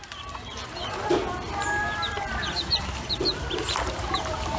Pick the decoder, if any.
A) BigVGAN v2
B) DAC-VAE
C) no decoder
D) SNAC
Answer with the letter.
A